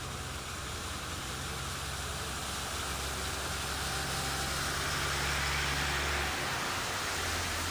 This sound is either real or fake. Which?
real